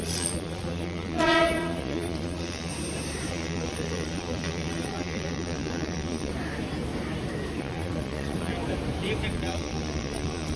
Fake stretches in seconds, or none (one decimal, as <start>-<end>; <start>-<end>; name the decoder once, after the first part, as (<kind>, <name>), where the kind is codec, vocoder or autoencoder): 0.0-2.7 (vocoder, Vocos); 3.3-6.3; 7.6-8.5; 9.3-10.6